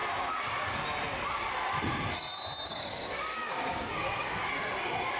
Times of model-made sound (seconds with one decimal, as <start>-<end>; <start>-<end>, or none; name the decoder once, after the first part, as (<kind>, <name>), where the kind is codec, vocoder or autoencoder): 2.7-4.5 (codec, DAC)